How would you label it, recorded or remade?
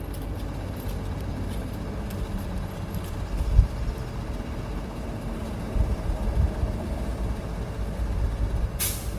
recorded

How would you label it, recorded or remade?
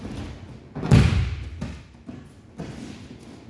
recorded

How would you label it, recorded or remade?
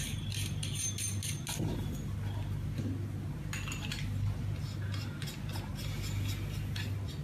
recorded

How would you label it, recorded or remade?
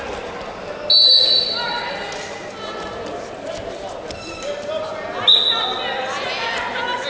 recorded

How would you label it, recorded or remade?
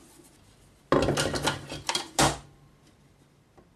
recorded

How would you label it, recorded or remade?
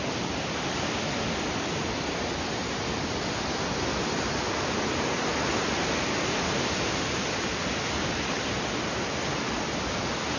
recorded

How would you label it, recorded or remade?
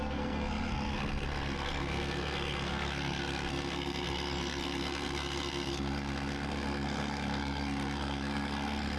remade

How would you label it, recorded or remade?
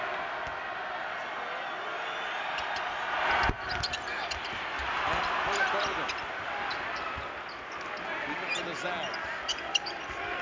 recorded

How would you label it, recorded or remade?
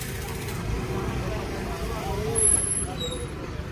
recorded